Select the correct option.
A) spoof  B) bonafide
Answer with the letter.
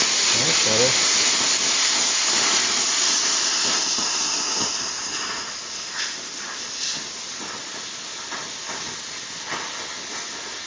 B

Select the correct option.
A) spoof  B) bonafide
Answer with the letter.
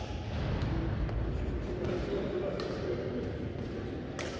B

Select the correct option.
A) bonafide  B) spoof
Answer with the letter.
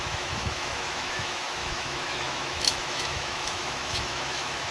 B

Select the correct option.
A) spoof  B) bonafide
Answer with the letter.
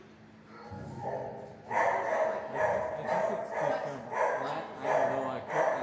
B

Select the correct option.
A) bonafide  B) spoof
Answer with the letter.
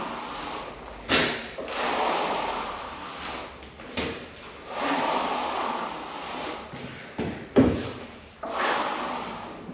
A